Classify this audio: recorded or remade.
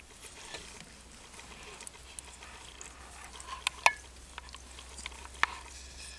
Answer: recorded